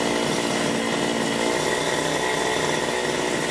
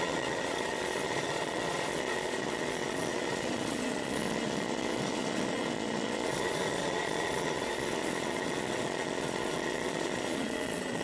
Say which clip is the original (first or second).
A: first